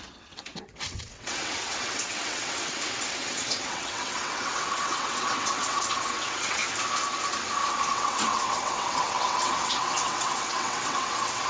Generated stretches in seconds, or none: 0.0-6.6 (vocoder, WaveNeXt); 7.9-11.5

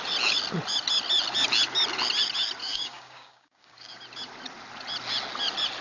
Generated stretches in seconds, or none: 2.6-4.0 (codec, DAC)

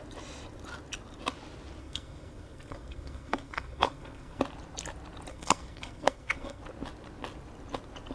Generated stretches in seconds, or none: 1.8-4.4 (codec, SNAC); 5.3-6.6

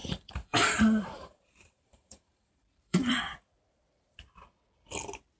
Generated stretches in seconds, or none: 0.0-3.2 (vocoder, BigVGAN v2)

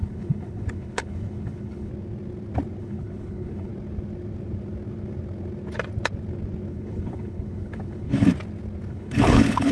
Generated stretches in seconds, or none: 0.0-1.9 (codec, HILCodec); 2.8-3.7; 6.7-8.3; 8.9-9.7